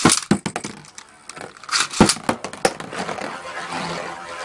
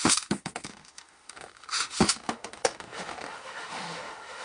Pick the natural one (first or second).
first